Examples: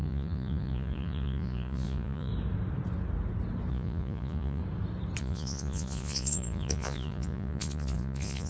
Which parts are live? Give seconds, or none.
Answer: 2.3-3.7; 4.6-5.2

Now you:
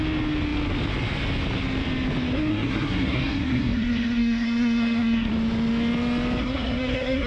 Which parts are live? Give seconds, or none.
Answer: 0.0-2.5; 5.3-6.4

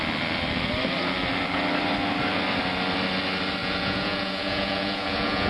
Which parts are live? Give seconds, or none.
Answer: 0.0-3.6